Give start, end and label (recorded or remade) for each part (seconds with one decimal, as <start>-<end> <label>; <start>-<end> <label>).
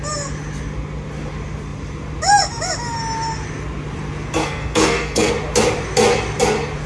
0.0-4.4 recorded; 4.4-5.3 remade; 5.3-6.9 recorded